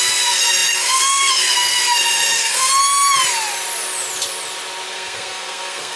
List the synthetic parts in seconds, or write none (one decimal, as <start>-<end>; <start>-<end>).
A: 0.0-2.7; 4.9-6.0